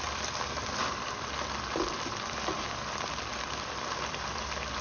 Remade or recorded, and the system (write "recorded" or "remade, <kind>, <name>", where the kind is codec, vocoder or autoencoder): remade, vocoder, BigVGAN v2